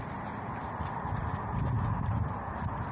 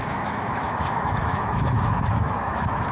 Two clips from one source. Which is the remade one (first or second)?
second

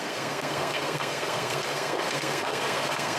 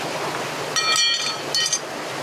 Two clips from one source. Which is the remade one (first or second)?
first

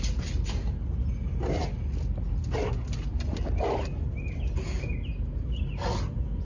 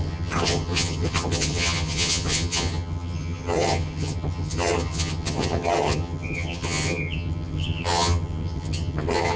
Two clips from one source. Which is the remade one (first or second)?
second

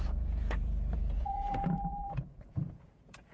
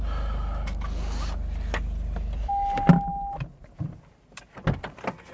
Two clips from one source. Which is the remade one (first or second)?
first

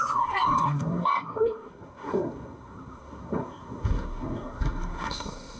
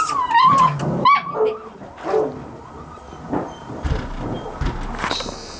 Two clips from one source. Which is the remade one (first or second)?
first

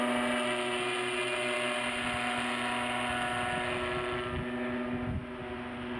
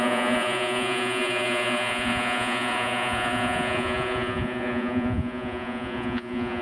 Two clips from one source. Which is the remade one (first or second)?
second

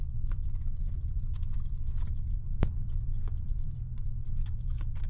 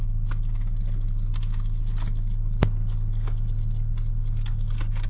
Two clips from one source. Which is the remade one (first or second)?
first